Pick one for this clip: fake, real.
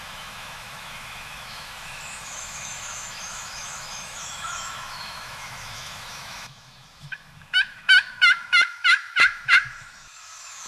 fake